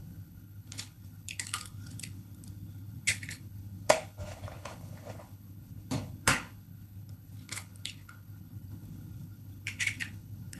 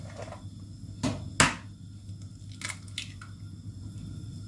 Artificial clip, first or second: first